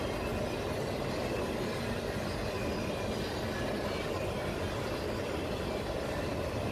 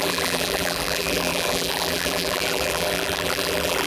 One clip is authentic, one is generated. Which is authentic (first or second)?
first